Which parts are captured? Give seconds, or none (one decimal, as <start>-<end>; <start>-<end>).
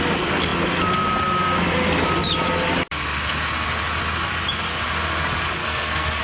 0.0-5.6